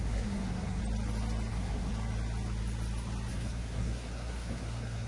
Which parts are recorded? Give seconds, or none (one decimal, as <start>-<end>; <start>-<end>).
0.8-1.5; 1.9-3.3